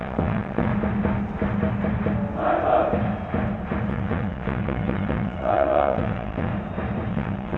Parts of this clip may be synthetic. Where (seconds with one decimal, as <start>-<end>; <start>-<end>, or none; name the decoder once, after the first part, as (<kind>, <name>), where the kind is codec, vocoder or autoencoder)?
0.0-0.7 (vocoder, WaveNeXt); 3.9-6.5; 7.1-7.6

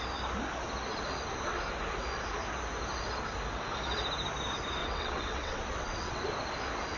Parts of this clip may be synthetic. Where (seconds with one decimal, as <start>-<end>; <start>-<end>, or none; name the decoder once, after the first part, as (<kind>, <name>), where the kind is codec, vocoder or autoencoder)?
4.8-6.2 (vocoder, WaveNeXt)

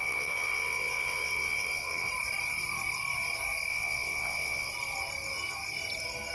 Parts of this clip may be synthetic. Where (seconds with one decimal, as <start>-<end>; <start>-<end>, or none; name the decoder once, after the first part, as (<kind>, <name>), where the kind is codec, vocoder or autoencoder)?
0.0-2.1 (vocoder, WaveNeXt); 3.7-4.7

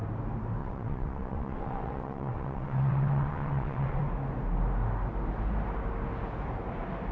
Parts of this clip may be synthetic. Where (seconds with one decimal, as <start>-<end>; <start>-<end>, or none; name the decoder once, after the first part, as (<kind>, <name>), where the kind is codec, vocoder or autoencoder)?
0.6-4.0 (vocoder, WaveNeXt)

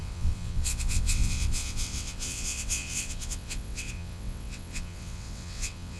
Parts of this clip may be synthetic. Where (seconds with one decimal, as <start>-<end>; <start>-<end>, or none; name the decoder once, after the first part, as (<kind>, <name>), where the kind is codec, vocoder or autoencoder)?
0.0-6.0 (vocoder, WaveNeXt)

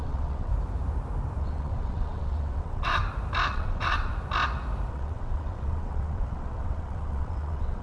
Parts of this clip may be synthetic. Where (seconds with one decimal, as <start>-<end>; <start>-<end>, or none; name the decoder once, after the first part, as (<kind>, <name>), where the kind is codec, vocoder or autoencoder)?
0.0-0.5 (vocoder, WaveNeXt); 1.4-3.0; 3.5-4.1; 4.9-7.8

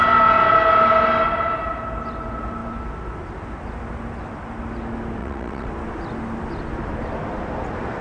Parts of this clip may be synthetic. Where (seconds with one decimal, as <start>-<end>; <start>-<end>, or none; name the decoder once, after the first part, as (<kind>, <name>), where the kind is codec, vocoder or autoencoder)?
5.2-5.7 (vocoder, WaveNeXt)

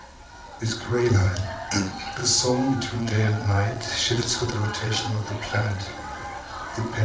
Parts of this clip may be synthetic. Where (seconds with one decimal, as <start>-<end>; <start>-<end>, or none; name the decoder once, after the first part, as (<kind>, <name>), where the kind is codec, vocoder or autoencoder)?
0.0-2.2 (vocoder, WaveNeXt); 3.0-7.0